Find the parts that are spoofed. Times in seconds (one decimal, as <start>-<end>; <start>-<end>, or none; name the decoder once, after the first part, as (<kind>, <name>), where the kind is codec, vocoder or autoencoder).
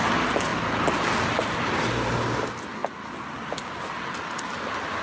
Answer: none